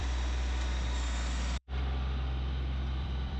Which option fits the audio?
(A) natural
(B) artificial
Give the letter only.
B